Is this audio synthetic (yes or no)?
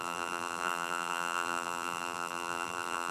yes